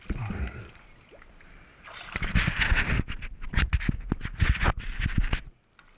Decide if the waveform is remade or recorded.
recorded